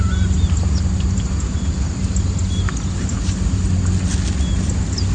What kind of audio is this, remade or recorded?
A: recorded